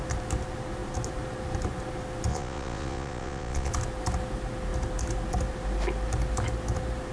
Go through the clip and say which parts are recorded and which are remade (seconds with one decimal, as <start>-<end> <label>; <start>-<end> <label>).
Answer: 0.0-2.3 recorded; 2.3-3.7 remade; 3.7-7.1 recorded